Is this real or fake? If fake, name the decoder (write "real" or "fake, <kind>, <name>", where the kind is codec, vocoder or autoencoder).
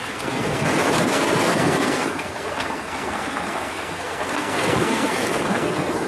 fake, codec, SNAC